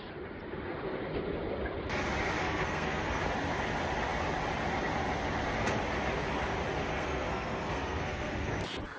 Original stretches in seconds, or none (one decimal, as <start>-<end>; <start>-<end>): 0.0-2.4; 3.2-6.9; 8.6-9.0